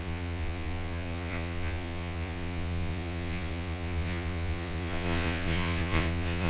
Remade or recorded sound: remade